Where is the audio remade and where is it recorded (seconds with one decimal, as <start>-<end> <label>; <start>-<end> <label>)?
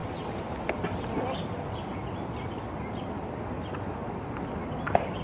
0.0-5.2 recorded